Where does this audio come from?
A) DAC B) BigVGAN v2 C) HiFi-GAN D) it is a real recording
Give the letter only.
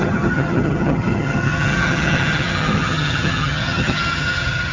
C